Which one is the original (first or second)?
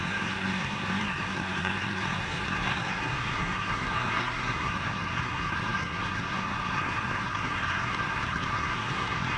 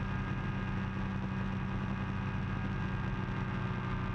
second